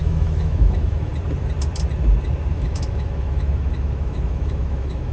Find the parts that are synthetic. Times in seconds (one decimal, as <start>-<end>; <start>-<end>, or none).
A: 0.0-1.1; 2.5-5.1